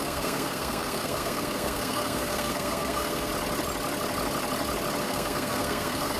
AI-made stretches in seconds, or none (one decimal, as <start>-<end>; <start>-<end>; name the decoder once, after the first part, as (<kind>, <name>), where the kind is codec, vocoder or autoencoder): 0.0-3.3 (codec, SNAC); 5.0-6.2